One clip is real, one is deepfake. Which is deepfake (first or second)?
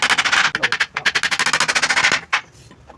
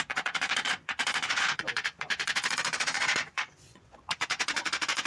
second